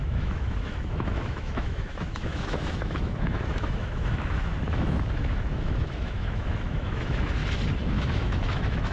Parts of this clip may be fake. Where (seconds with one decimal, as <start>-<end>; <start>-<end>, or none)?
0.0-7.4; 7.9-8.9